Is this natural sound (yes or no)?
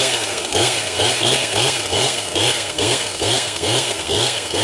no